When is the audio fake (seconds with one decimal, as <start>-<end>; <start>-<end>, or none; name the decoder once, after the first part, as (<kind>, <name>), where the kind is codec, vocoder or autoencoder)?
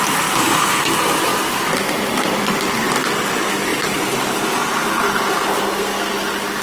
5.5-6.1 (codec, SNAC)